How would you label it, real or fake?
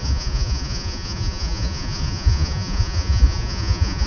fake